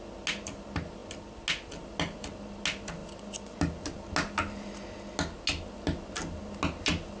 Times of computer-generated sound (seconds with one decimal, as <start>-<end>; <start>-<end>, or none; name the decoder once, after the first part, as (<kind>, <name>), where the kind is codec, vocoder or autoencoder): none